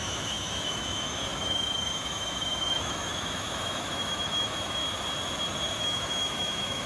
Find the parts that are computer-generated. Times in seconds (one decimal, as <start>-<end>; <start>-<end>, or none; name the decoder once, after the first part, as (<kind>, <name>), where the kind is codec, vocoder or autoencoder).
0.0-4.8 (autoencoder, DAC-VAE); 5.8-6.9